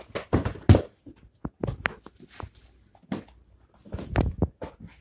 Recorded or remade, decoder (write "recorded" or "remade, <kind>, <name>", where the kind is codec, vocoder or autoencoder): recorded